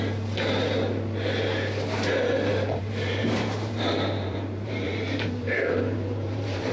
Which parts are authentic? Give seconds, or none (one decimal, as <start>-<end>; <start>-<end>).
0.0-2.5